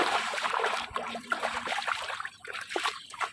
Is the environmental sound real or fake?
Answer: fake